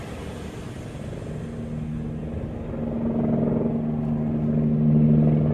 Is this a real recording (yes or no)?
yes